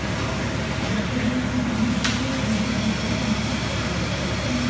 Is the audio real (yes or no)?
yes